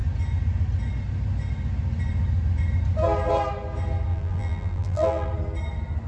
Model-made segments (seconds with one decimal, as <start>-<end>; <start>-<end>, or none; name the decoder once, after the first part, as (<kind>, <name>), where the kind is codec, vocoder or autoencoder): 4.1-5.3 (vocoder, BigVGAN v2)